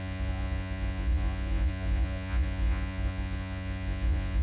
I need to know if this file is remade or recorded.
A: remade